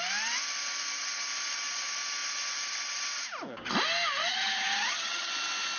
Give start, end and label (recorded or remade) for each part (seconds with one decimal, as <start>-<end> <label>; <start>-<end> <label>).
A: 0.0-4.2 recorded; 4.2-5.3 remade; 5.3-5.8 recorded